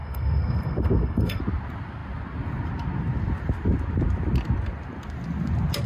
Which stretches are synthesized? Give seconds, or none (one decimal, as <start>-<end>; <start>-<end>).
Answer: 0.0-1.4